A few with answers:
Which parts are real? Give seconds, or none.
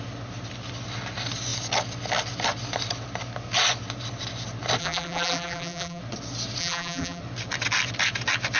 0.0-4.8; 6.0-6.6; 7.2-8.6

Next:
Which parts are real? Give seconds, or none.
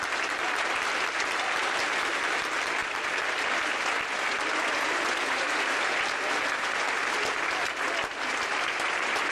0.0-2.8; 5.1-9.3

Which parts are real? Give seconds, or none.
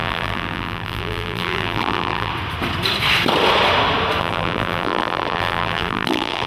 2.3-4.2